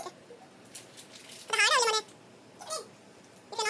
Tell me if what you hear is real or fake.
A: real